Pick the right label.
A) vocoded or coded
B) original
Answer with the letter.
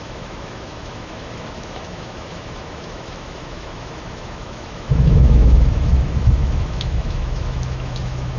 A